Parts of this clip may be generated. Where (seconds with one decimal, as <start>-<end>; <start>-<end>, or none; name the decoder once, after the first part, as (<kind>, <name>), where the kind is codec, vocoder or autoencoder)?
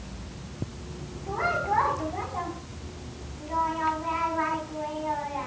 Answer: none